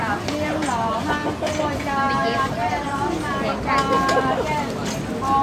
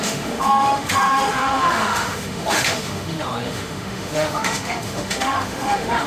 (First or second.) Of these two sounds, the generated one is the second